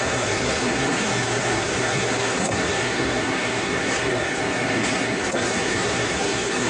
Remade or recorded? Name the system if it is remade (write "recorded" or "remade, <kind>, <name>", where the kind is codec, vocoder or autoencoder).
remade, codec, SNAC